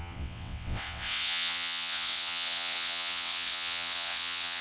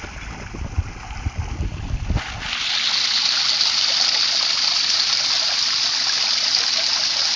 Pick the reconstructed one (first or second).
first